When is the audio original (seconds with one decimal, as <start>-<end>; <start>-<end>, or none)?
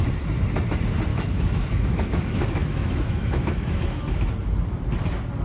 0.0-1.1; 4.3-5.4